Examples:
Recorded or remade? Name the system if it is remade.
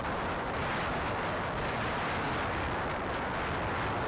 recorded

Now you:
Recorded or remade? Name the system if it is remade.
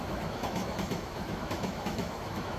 remade, autoencoder, DAC-VAE